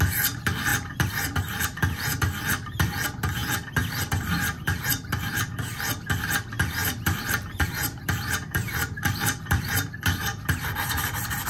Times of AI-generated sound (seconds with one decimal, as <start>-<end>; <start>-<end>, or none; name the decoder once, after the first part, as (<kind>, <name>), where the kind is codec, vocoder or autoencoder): 3.4-4.9 (vocoder, BigVGAN v2); 6.8-10.6